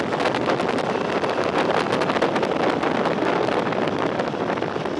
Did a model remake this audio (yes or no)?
no